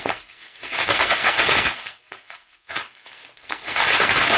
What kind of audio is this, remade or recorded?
remade